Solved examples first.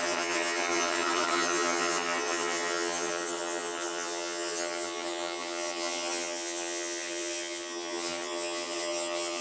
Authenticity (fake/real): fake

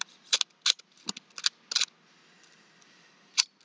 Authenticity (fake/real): real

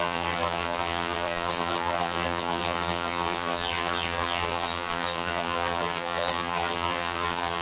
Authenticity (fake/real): fake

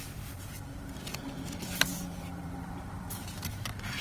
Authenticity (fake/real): fake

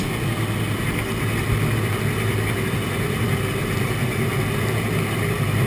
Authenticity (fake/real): real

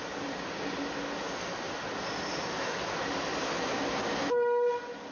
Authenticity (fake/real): real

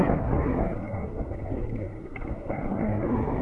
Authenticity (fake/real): fake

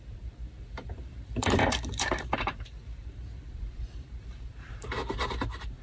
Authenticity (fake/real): fake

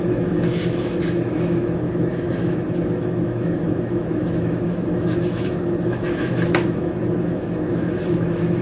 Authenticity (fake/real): fake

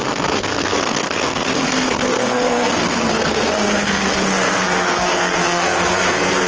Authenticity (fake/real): fake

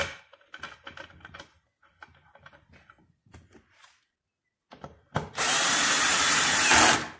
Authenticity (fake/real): real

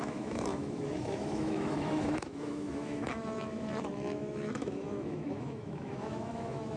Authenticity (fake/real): fake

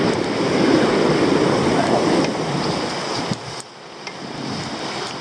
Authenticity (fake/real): real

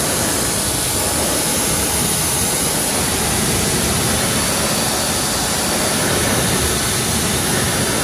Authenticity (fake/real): real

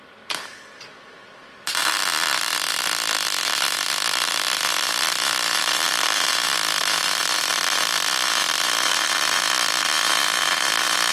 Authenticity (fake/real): real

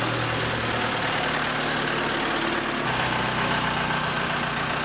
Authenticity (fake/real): real